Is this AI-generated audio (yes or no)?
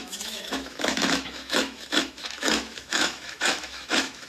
yes